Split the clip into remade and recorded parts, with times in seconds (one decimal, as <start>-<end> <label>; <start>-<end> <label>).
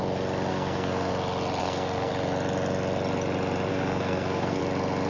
0.0-0.5 recorded; 0.5-1.1 remade; 1.1-1.6 recorded; 1.6-2.1 remade; 2.1-3.7 recorded; 3.7-4.6 remade; 4.6-5.1 recorded